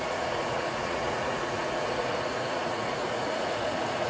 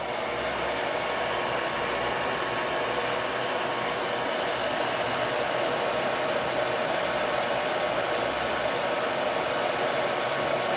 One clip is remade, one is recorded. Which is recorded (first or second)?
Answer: second